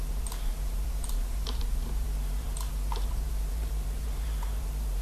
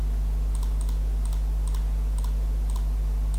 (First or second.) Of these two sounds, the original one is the second